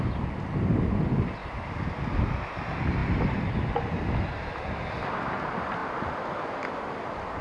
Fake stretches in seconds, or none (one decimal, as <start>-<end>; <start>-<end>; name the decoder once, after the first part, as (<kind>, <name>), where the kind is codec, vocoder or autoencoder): none

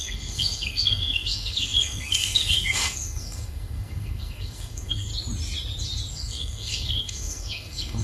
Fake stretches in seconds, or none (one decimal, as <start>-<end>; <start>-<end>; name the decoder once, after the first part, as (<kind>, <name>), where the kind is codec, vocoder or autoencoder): 0.0-5.1 (codec, SNAC); 6.1-8.0

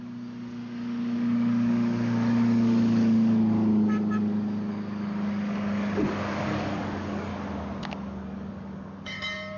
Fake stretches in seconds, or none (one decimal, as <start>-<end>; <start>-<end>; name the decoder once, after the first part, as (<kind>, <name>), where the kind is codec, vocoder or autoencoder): 0.0-7.3 (codec, DAC); 7.8-9.6

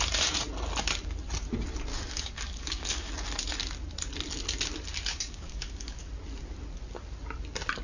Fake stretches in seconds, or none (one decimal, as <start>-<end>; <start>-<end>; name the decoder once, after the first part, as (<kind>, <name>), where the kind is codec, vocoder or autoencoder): 1.9-3.1 (codec, DAC); 5.1-6.1

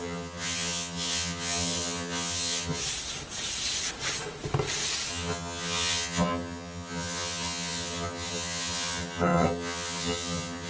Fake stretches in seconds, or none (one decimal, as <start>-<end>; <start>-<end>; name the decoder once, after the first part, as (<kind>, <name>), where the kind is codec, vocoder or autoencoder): 0.0-2.8 (vocoder, HiFi-GAN); 5.1-10.7